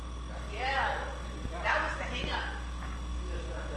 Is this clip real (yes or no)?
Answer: yes